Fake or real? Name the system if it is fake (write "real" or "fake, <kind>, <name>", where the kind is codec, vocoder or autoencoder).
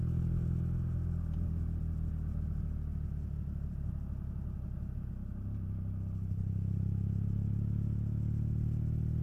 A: real